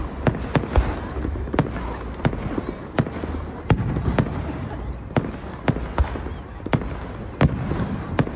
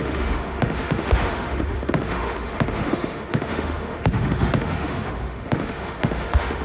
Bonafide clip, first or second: first